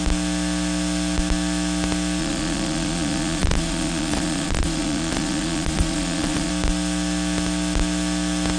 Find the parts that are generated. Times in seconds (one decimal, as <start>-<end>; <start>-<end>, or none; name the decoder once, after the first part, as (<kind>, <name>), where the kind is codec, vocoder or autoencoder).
2.2-6.5 (vocoder, Vocos)